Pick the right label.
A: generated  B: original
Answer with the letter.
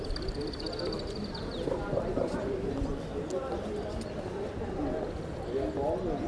B